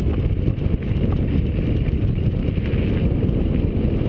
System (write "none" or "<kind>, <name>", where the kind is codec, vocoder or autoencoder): none